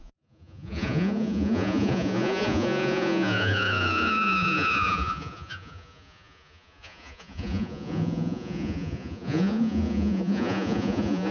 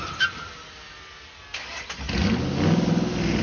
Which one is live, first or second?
second